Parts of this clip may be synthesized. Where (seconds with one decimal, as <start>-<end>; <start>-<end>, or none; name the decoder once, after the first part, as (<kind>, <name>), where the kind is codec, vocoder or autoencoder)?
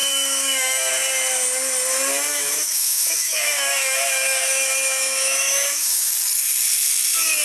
0.0-0.9 (autoencoder, DAC-VAE); 2.3-6.1